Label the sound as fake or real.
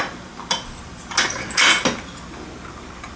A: real